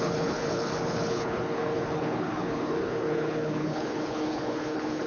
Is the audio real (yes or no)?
no